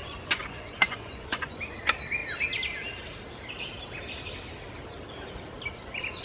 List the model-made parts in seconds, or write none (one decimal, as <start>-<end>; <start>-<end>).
0.0-1.6